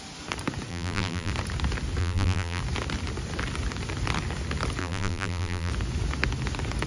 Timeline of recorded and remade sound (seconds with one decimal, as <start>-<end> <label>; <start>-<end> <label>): 0.0-0.7 recorded; 0.7-1.3 remade; 1.3-2.0 recorded; 2.0-2.6 remade; 2.6-4.8 recorded; 4.8-5.7 remade; 5.7-6.9 recorded